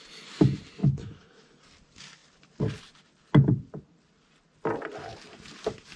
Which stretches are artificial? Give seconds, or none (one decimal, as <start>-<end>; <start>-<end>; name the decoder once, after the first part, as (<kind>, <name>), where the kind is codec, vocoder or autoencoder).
0.8-1.6 (autoencoder, DAC-VAE)